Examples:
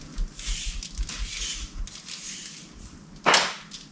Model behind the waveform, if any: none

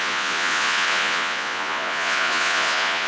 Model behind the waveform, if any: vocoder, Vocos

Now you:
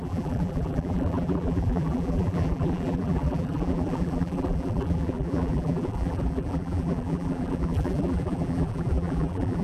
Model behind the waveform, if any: vocoder, BigVGAN v2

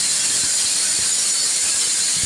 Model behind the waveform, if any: none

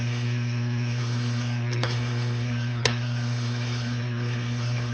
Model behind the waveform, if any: codec, SNAC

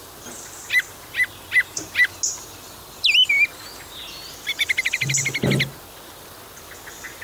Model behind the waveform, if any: none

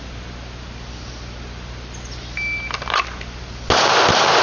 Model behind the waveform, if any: none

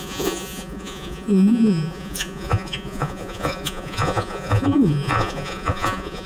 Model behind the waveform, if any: vocoder, Vocos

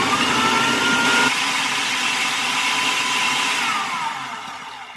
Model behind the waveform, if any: none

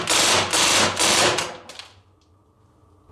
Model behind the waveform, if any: none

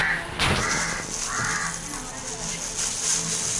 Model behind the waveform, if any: none